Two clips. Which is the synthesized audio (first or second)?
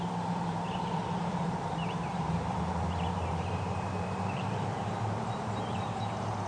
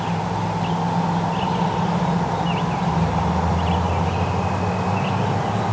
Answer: first